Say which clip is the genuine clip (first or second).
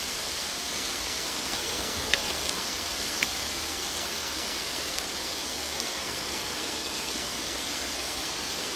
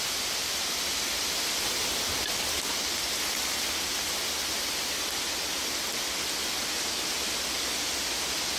second